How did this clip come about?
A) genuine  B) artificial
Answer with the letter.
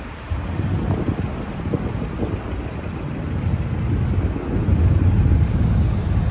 A